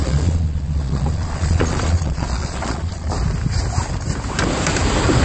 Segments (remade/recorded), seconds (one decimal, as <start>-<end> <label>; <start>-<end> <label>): 0.0-3.1 remade; 3.1-5.2 recorded